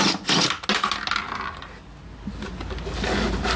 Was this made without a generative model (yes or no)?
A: yes